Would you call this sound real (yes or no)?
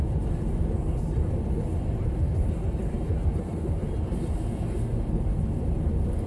yes